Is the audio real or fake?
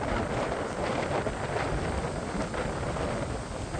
real